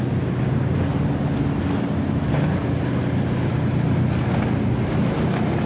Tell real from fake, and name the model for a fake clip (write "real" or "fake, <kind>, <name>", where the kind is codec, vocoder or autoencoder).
real